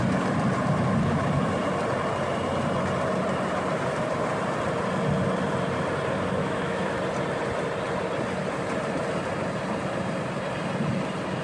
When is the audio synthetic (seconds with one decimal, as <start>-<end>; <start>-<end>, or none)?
6.4-7.0